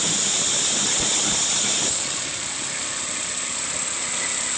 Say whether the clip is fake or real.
real